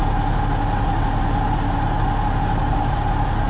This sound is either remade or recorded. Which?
recorded